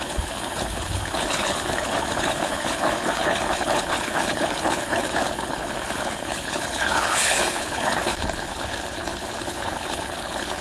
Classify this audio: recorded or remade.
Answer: remade